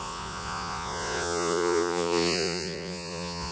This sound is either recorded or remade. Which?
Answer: remade